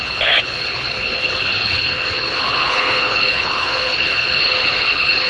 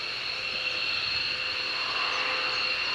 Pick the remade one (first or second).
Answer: first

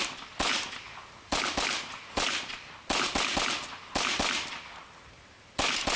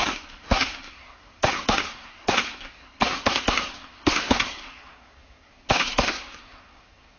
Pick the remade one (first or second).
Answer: second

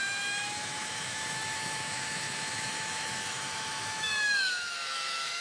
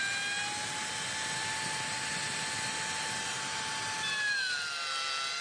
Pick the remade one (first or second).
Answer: first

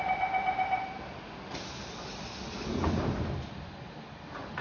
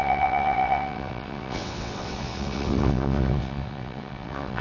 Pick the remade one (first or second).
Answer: second